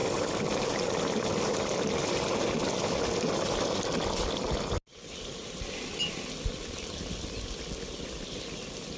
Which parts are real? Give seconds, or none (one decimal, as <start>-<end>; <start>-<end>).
0.0-9.0